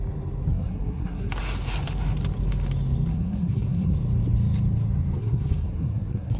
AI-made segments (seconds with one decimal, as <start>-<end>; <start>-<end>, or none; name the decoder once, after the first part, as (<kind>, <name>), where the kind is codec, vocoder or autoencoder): 0.5-1.3 (codec, SNAC); 3.1-3.9; 5.2-6.4